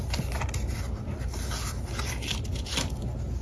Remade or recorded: recorded